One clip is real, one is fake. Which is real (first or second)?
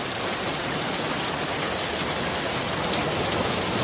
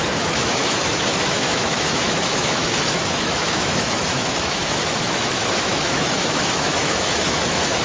first